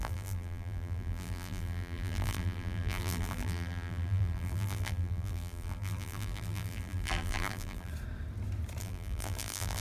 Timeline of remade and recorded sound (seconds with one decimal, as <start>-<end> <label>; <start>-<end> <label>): 0.0-7.9 remade; 7.9-8.8 recorded; 8.8-9.8 remade

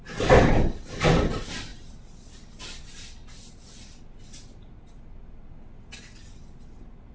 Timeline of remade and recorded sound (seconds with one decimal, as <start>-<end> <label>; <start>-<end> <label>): 0.0-7.1 recorded

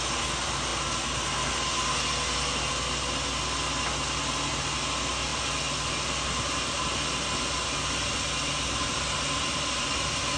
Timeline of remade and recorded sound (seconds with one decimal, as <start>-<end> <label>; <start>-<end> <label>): 0.0-10.4 recorded

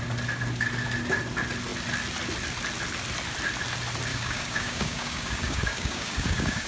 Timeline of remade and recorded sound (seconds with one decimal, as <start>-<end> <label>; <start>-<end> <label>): 0.0-4.1 recorded; 4.1-6.7 remade

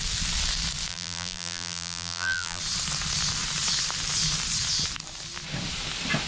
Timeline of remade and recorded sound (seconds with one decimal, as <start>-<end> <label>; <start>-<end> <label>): 0.0-0.9 recorded; 0.9-2.6 remade; 2.6-6.3 recorded

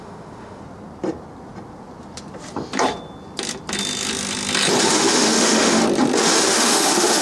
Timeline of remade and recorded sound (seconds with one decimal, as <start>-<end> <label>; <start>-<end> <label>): 0.0-0.6 remade; 0.6-4.8 recorded; 4.8-5.8 remade; 5.8-6.3 recorded; 6.3-7.2 remade

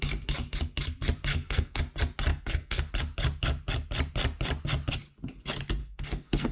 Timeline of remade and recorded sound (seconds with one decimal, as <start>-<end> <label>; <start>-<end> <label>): 0.0-1.3 recorded; 1.3-1.8 remade; 1.8-2.3 recorded; 2.3-2.9 remade; 2.9-5.8 recorded; 5.8-6.5 remade

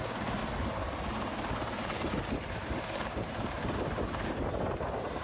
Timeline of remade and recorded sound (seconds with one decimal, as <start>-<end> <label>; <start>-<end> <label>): 0.0-0.4 remade; 0.4-2.4 recorded; 2.4-5.2 remade